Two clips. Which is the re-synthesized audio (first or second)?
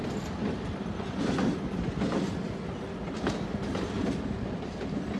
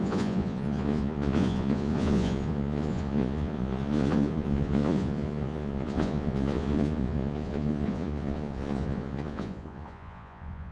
second